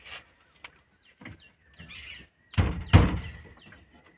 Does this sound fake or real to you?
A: real